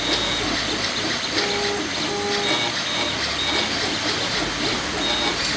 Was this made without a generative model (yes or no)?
yes